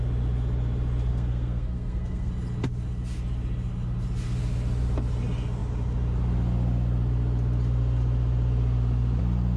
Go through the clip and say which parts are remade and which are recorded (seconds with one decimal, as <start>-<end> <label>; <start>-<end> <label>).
0.0-1.1 recorded; 1.1-2.3 remade; 2.3-9.6 recorded